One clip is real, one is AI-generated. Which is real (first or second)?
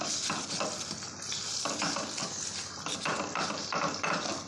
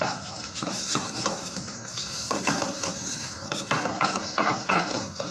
first